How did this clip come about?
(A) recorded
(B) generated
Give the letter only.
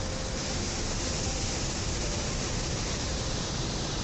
A